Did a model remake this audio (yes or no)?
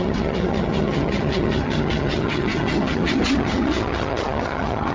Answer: yes